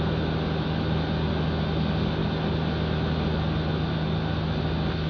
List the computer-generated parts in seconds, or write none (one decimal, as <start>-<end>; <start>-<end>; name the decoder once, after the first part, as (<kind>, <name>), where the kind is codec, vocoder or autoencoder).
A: none